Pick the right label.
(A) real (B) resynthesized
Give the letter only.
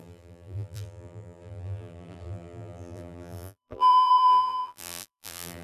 B